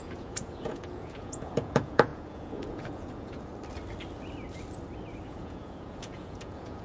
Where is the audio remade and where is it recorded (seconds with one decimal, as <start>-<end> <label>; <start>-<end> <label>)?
0.0-3.5 remade; 3.5-5.3 recorded; 5.3-6.8 remade